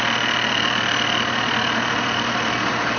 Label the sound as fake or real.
real